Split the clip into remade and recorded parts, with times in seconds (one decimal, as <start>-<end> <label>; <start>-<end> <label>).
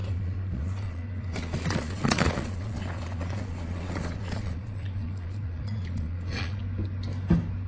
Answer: 0.0-6.6 remade; 6.6-7.7 recorded